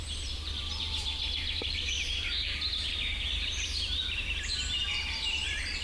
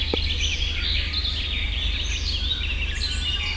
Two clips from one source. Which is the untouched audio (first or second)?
second